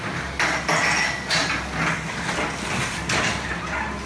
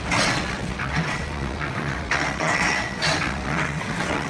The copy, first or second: second